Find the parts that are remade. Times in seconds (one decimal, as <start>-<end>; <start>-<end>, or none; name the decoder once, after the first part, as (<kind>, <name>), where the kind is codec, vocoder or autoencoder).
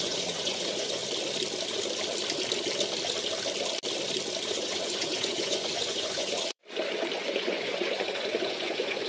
0.0-1.0 (vocoder, Vocos); 4.5-6.6; 7.2-9.1